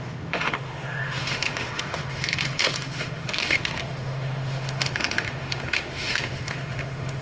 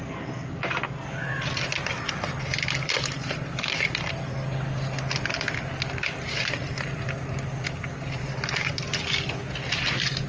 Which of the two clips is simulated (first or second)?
first